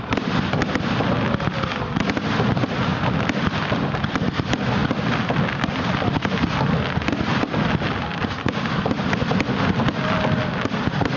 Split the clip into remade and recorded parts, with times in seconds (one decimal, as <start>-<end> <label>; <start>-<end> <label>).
0.0-2.9 recorded; 2.9-4.0 remade; 4.0-11.2 recorded